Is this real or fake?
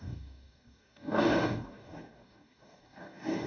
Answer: fake